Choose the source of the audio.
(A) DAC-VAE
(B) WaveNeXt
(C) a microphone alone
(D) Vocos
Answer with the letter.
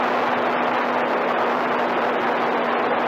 C